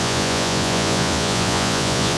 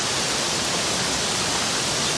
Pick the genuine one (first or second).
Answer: second